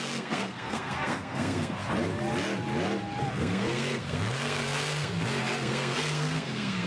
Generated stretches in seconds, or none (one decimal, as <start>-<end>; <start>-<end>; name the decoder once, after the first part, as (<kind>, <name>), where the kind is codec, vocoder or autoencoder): 0.0-1.8 (codec, SNAC); 3.2-6.9